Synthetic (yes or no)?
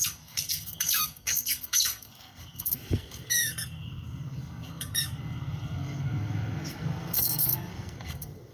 yes